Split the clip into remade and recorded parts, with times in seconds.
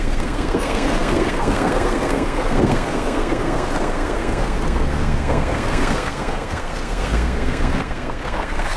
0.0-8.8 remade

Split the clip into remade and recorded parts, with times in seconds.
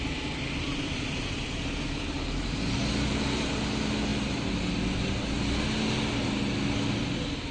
0.0-7.5 recorded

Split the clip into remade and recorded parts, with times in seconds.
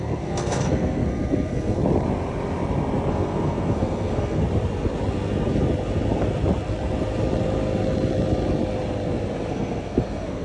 0.0-1.8 remade; 1.8-3.1 recorded; 3.1-4.4 remade; 4.4-9.5 recorded; 9.5-10.4 remade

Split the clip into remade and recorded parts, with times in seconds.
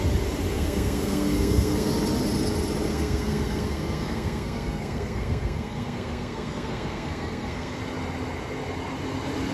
0.0-0.5 recorded; 0.5-1.9 remade; 1.9-2.9 recorded; 2.9-7.8 remade; 7.8-9.5 recorded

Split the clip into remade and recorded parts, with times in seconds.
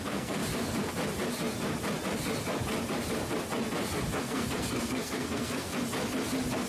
0.0-0.4 remade; 0.4-4.2 recorded; 4.2-5.7 remade; 5.7-6.7 recorded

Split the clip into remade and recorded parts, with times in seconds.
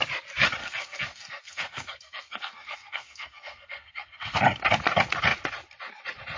0.0-0.6 recorded; 0.6-4.4 remade; 4.4-6.4 recorded